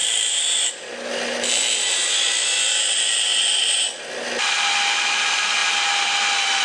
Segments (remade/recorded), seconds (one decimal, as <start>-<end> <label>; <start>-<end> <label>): 0.0-6.6 recorded